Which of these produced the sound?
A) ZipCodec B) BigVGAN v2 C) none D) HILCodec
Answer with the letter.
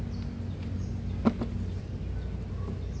C